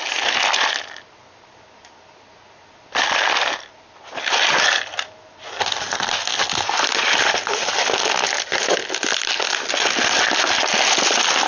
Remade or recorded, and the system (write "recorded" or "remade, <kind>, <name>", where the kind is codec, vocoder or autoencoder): recorded